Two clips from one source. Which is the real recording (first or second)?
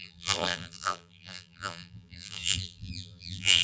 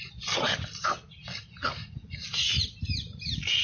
second